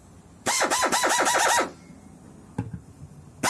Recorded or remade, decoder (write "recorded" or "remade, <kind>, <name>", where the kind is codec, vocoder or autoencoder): recorded